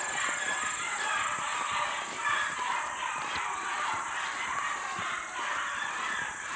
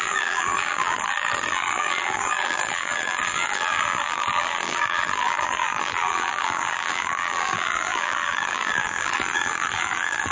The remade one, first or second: second